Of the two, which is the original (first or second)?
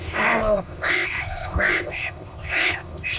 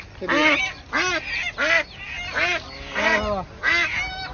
second